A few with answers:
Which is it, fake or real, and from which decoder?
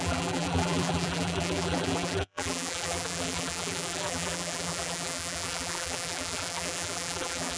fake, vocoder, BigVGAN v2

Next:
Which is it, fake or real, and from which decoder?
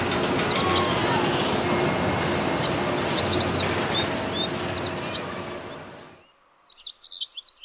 real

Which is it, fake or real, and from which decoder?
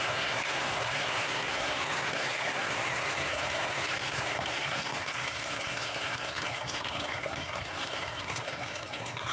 fake, codec, SNAC